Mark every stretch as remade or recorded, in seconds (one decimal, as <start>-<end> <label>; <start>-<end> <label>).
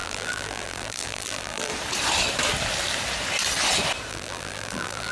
0.0-1.7 remade; 1.7-4.1 recorded; 4.1-5.1 remade